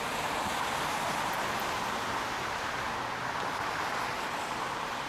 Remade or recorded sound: recorded